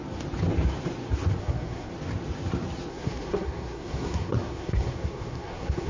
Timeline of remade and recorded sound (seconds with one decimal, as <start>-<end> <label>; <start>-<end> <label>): 0.0-1.4 recorded; 1.4-1.9 remade; 1.9-2.9 recorded; 2.9-5.9 remade